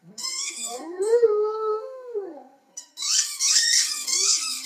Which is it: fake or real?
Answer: fake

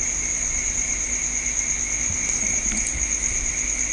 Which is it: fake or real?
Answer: real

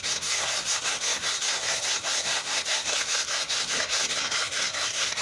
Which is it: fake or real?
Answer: fake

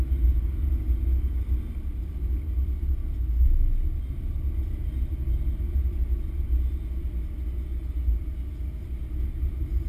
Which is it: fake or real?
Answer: real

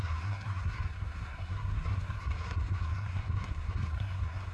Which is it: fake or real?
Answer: fake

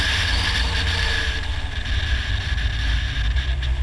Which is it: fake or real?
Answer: real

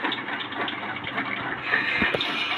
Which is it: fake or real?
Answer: real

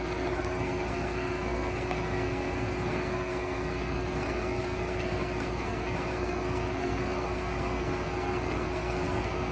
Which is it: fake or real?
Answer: fake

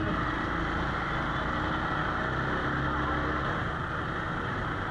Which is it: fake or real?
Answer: real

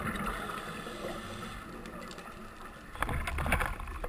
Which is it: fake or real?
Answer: real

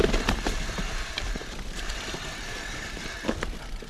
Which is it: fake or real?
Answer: real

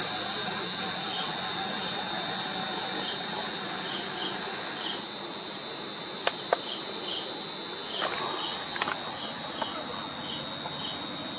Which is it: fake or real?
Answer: real